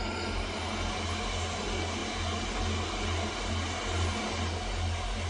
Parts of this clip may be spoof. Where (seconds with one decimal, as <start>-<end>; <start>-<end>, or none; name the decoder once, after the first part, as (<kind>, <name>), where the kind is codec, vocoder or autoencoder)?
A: none